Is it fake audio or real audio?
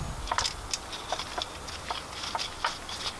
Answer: real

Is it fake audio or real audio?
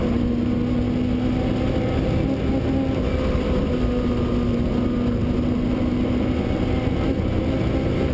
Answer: real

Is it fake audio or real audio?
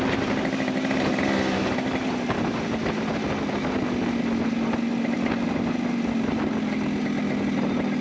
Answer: real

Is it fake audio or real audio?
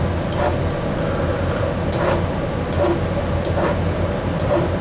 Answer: real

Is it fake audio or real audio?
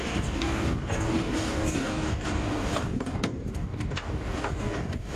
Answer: fake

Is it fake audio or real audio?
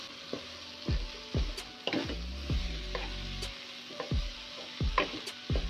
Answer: real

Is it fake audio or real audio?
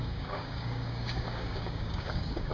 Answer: fake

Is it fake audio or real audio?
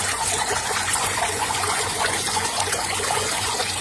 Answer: fake